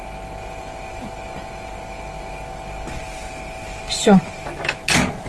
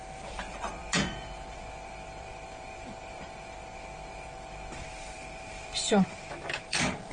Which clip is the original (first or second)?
first